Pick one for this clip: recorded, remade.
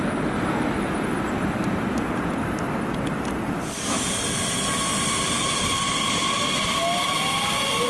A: recorded